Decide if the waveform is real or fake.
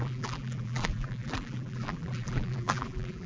fake